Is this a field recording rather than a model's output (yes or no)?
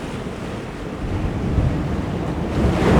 yes